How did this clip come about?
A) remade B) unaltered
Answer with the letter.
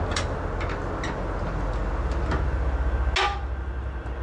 B